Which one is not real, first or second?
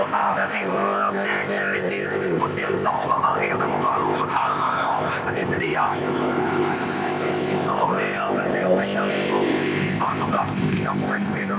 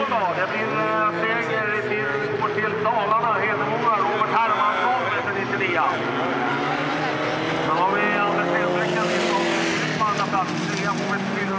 first